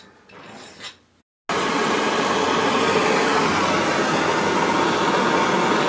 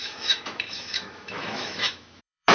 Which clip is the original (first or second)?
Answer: first